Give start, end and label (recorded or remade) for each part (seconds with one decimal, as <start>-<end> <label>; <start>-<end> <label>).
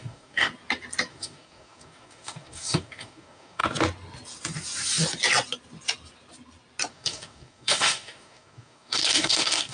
0.0-0.5 remade; 0.5-1.1 recorded; 1.1-3.6 remade; 3.6-6.9 recorded; 6.9-9.7 remade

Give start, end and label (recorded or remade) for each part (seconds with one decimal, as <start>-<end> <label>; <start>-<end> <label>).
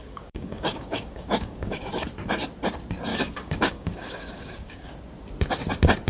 0.0-2.0 remade; 2.0-3.1 recorded; 3.1-4.9 remade; 4.9-6.1 recorded